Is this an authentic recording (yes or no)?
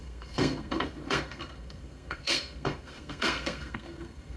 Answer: no